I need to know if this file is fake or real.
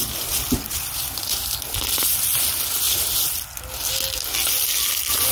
real